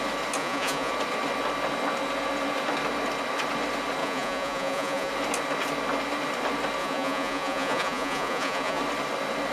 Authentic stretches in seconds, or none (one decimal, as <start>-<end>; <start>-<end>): 0.0-0.4; 0.9-4.0; 5.1-6.8; 8.8-9.5